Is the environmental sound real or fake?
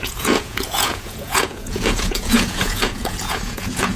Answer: fake